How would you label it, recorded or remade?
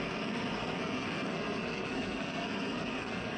remade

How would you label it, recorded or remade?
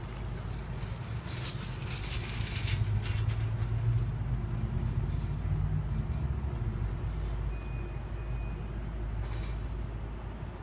recorded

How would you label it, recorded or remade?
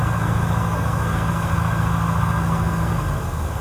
remade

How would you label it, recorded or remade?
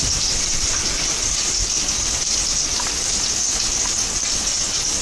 recorded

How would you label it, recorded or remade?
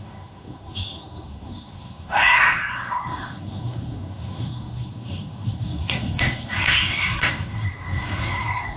remade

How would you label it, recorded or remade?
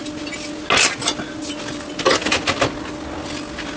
recorded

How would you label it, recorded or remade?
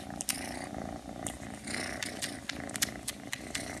recorded